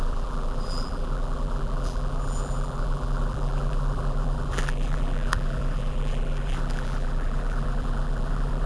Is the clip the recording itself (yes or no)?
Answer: no